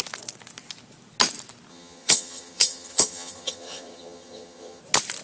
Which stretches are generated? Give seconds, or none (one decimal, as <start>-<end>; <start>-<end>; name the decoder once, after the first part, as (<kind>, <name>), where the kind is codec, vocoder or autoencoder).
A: 1.7-4.8 (vocoder, HiFi-GAN)